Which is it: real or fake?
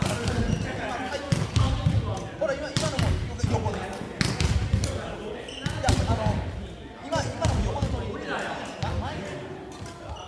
real